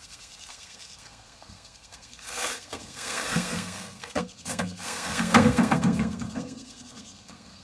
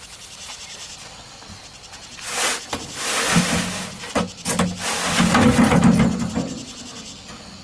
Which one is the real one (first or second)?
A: second